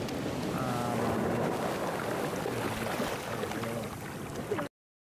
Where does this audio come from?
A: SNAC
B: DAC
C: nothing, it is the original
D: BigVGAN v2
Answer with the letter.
C